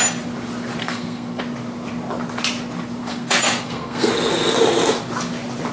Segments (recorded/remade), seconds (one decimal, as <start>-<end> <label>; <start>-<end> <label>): 0.0-0.8 recorded; 0.8-1.4 remade; 1.4-3.0 recorded; 3.0-4.1 remade; 4.1-5.7 recorded